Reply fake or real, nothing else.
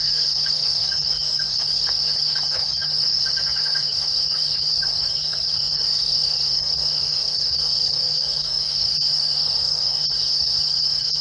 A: fake